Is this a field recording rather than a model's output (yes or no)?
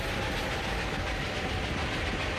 yes